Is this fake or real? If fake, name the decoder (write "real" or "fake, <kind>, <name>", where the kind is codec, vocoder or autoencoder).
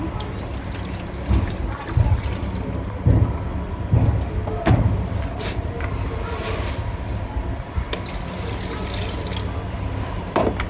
real